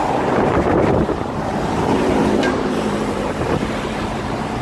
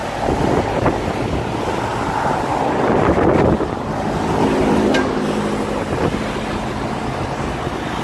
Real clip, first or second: second